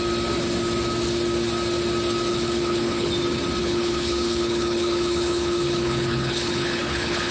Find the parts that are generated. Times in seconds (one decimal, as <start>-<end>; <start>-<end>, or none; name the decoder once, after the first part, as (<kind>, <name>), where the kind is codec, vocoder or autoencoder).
2.3-3.1 (codec, HILCodec); 3.6-7.3